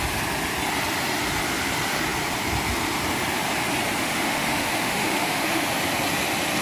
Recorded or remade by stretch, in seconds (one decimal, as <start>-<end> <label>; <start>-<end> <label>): 0.0-4.0 recorded; 4.0-5.7 remade; 5.7-6.6 recorded